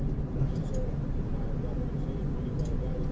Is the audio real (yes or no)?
yes